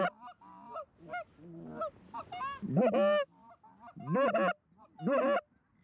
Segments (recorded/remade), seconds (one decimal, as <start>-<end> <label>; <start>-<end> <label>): 0.0-5.8 recorded